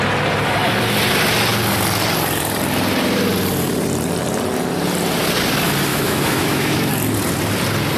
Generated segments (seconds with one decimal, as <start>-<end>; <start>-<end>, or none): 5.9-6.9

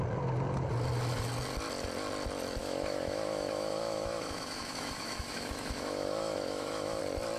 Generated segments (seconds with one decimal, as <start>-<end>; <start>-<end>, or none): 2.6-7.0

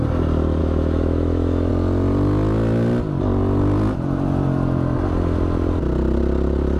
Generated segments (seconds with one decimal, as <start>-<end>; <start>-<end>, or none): 0.6-1.7

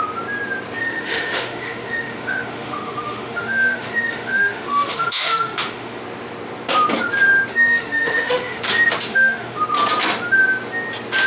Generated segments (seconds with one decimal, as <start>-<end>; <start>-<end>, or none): 0.8-6.0; 7.5-8.6; 9.1-9.6